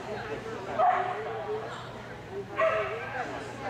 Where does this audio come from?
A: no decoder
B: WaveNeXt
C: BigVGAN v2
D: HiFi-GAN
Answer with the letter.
C